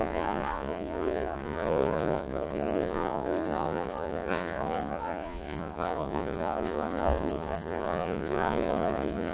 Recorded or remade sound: remade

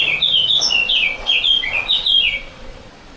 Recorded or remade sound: remade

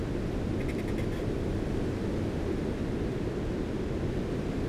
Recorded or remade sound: recorded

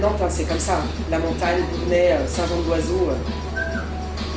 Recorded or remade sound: recorded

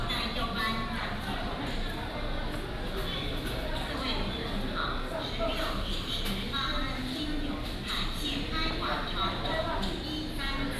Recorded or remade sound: recorded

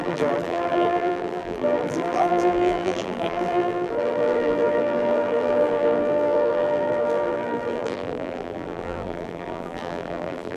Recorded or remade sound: remade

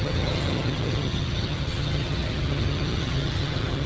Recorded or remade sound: remade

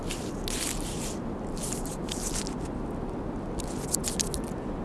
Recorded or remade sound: recorded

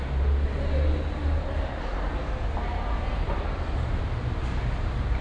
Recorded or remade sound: recorded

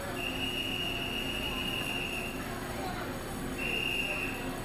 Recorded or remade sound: recorded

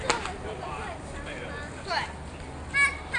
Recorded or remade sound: recorded